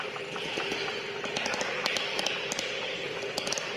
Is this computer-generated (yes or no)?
no